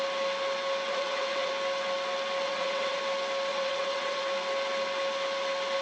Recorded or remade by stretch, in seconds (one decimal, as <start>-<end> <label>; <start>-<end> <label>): 0.0-0.9 recorded; 0.9-1.5 remade; 1.5-2.4 recorded; 2.4-3.0 remade; 3.0-3.5 recorded; 3.5-4.2 remade; 4.2-5.8 recorded